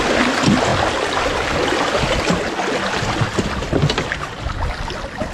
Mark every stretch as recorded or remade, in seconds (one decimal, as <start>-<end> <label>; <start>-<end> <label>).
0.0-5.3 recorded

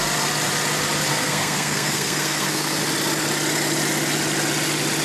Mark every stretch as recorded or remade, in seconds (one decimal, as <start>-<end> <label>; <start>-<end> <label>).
0.0-1.1 recorded; 1.1-2.8 remade; 2.8-5.0 recorded

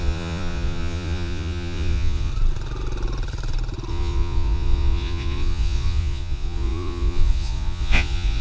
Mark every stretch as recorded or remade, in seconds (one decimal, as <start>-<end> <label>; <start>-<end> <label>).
0.0-2.3 remade; 2.3-3.9 recorded; 3.9-8.4 remade